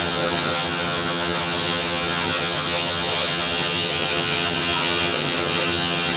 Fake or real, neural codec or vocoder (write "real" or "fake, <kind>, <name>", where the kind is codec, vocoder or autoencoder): fake, vocoder, HiFi-GAN